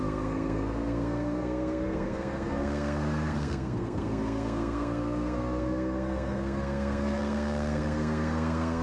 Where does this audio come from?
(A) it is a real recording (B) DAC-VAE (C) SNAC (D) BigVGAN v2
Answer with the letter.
C